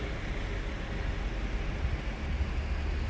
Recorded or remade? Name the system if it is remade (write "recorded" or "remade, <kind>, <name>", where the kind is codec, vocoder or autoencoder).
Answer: recorded